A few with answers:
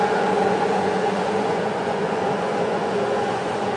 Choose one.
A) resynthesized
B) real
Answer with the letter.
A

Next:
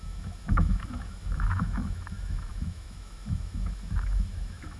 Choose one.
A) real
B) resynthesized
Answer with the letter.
B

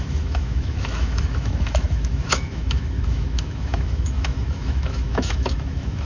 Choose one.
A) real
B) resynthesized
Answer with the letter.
B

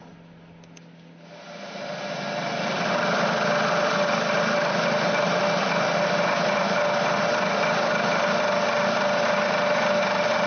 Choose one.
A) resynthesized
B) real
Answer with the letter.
B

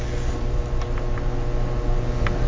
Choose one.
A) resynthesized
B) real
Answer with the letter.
B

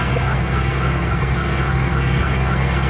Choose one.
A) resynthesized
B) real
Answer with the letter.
A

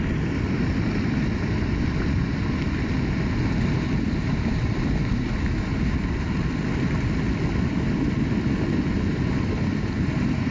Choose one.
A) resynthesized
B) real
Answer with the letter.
B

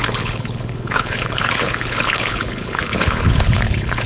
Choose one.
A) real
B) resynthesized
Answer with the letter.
B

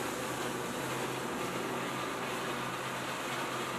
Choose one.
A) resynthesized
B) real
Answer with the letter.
B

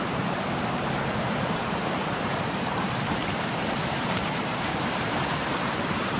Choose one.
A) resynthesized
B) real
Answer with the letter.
A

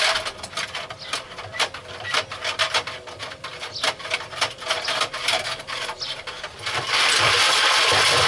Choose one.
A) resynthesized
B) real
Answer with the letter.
B